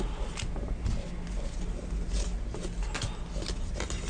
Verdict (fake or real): real